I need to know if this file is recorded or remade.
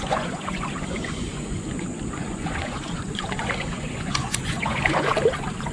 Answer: remade